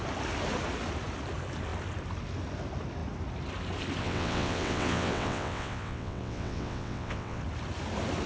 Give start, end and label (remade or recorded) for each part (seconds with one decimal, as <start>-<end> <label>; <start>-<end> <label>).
0.0-4.0 recorded; 4.0-7.4 remade; 7.4-8.3 recorded